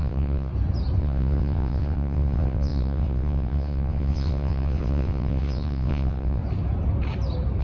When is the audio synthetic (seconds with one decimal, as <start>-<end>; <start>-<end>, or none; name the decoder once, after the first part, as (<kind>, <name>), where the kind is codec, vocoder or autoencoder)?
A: 0.0-0.5 (vocoder, WaveNeXt); 1.0-6.4